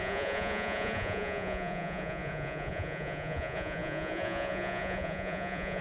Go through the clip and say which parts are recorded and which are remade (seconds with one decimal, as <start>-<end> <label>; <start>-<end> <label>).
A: 0.0-5.8 remade